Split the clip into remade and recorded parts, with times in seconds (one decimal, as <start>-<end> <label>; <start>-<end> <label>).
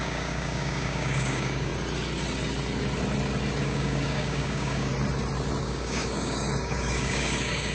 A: 0.0-1.7 remade; 1.7-3.6 recorded; 3.6-4.9 remade; 4.9-5.6 recorded; 5.6-7.7 remade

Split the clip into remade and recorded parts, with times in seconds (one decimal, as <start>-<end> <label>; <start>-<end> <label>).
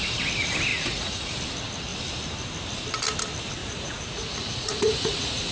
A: 0.0-0.7 recorded; 0.7-1.3 remade; 1.3-3.6 recorded; 3.6-5.5 remade